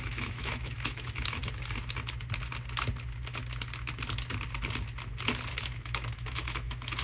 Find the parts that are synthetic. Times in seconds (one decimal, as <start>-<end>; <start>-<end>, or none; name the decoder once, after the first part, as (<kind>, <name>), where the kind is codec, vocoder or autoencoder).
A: 0.0-1.4 (autoencoder, DAC-VAE); 5.6-7.0